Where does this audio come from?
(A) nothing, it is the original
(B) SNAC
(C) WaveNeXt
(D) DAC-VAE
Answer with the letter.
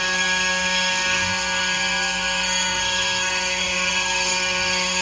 B